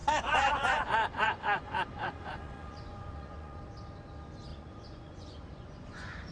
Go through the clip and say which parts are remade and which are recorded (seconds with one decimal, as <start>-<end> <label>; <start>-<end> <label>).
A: 0.0-3.6 remade; 3.6-4.5 recorded; 4.5-6.3 remade